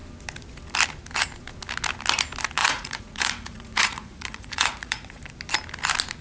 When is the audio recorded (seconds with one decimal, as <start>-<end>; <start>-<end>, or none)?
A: 0.0-2.6; 5.2-6.2